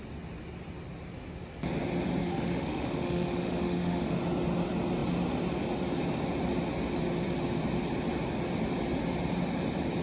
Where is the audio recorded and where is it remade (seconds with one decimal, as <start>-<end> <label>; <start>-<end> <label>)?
0.0-2.2 recorded; 2.2-4.2 remade; 4.2-10.0 recorded